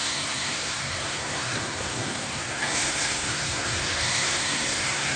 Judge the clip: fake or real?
fake